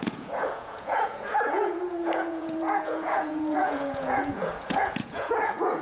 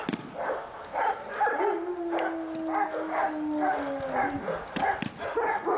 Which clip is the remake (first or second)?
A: first